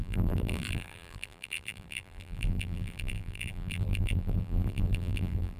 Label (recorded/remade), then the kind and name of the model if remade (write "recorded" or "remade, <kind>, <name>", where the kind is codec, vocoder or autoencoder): remade, vocoder, BigVGAN v2